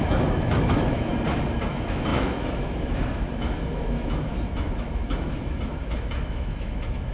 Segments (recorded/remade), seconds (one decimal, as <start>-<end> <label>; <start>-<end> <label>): 0.0-1.1 remade; 1.1-1.7 recorded; 1.7-7.1 remade